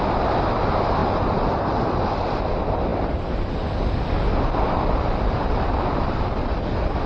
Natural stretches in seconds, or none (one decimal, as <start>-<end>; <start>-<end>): 0.0-7.1